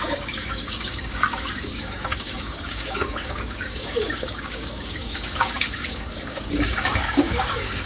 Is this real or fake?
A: fake